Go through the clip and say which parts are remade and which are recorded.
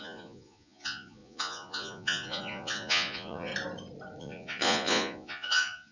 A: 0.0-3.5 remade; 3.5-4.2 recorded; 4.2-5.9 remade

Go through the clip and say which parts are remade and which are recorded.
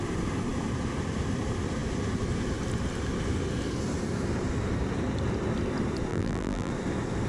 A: 0.0-6.1 recorded; 6.1-6.7 remade; 6.7-7.3 recorded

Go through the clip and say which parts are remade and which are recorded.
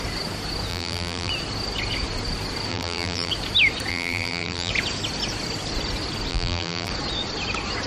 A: 0.0-0.7 recorded; 0.7-1.3 remade; 1.3-2.7 recorded; 2.7-3.3 remade; 3.3-3.9 recorded; 3.9-4.7 remade; 4.7-6.3 recorded; 6.3-6.9 remade; 6.9-7.9 recorded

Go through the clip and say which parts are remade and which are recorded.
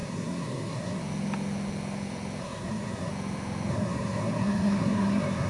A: 0.0-1.0 remade; 1.0-2.4 recorded; 2.4-3.1 remade; 3.1-3.7 recorded; 3.7-5.5 remade